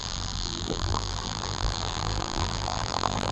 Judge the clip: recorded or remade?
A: remade